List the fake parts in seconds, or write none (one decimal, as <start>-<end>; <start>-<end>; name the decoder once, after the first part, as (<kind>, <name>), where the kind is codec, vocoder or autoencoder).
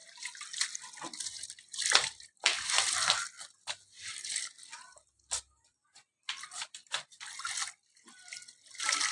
none